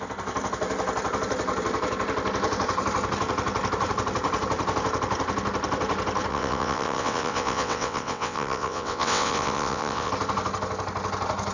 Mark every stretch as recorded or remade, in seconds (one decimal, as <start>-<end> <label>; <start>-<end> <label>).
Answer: 0.0-6.3 recorded; 6.3-10.1 remade; 10.1-11.5 recorded